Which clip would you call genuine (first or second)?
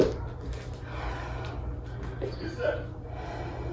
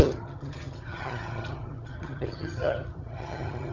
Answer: first